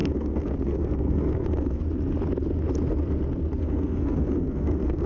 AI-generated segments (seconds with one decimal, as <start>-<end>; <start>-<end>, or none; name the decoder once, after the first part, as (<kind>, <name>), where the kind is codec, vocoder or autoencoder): 0.0-1.8 (codec, SNAC); 3.6-5.1